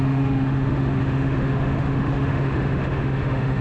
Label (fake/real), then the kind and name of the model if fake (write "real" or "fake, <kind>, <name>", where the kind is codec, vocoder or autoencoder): fake, autoencoder, DAC-VAE